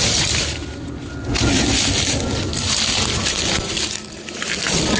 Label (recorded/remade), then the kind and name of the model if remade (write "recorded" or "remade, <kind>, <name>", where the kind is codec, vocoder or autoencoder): recorded